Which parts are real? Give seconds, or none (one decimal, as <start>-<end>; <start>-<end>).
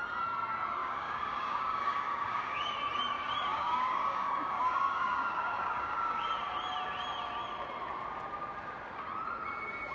0.0-0.8; 2.7-3.5; 6.3-9.9